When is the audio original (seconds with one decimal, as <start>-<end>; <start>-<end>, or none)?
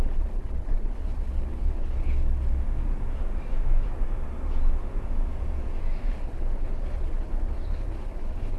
2.5-6.1